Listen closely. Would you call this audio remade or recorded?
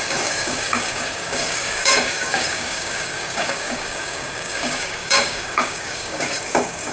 remade